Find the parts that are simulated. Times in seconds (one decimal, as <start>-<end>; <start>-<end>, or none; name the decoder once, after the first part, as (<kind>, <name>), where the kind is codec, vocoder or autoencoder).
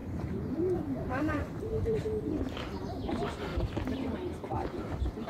0.0-2.0 (vocoder, BigVGAN v2); 2.8-3.5